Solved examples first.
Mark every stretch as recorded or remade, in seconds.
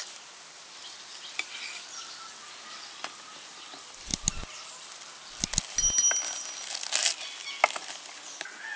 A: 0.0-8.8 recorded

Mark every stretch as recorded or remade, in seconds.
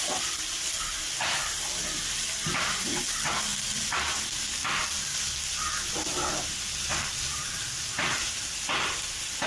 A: 0.0-9.5 recorded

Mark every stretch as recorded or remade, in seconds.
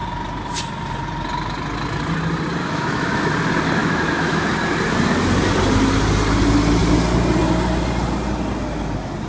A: 0.0-2.6 recorded; 2.6-3.3 remade; 3.3-3.8 recorded; 3.8-4.5 remade; 4.5-9.3 recorded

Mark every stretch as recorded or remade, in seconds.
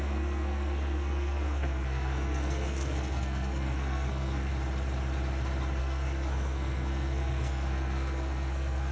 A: 0.0-4.5 remade; 4.5-5.8 recorded; 5.8-8.9 remade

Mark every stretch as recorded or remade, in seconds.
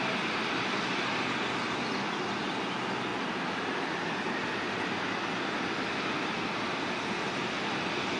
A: 0.0-8.2 recorded